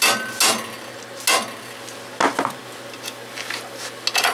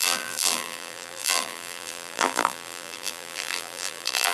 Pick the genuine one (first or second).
first